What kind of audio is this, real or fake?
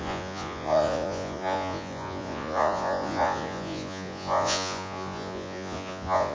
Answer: fake